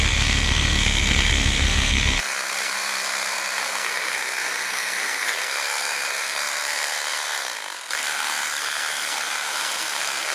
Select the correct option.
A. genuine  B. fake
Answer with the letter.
B